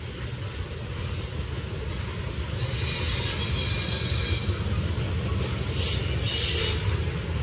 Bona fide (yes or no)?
yes